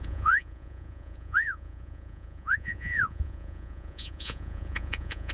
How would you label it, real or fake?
fake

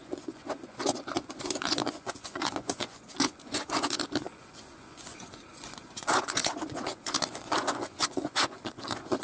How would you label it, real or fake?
fake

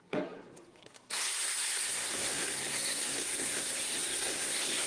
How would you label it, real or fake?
fake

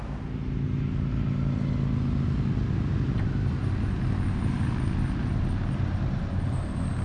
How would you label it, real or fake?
real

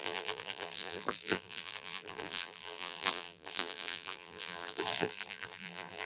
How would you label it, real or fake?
fake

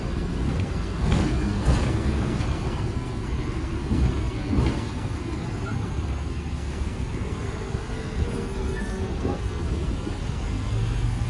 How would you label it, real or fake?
fake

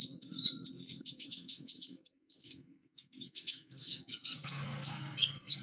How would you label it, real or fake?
fake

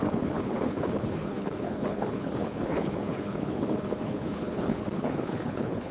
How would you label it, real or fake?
fake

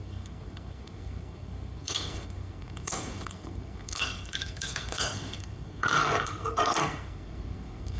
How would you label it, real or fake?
fake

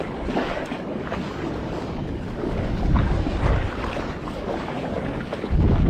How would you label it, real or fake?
fake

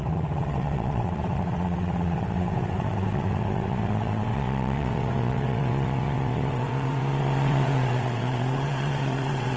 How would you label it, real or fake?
fake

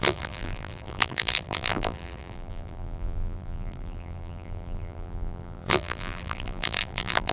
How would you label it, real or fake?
fake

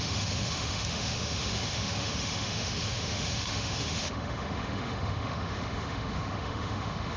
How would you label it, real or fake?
fake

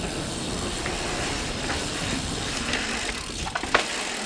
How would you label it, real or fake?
real